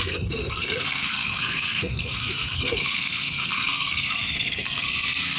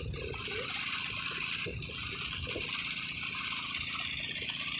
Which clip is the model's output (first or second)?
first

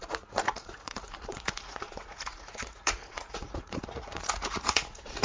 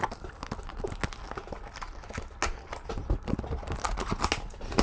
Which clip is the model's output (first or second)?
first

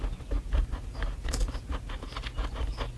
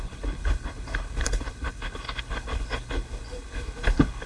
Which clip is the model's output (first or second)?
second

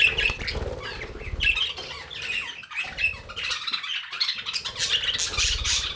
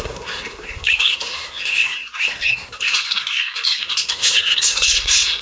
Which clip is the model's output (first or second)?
second